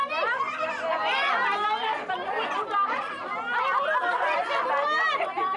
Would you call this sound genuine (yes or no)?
yes